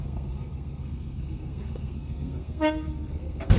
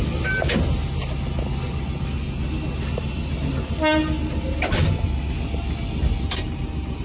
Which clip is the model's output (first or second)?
first